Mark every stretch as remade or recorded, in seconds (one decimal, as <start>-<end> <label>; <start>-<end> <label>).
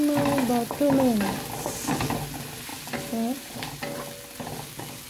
0.0-5.1 recorded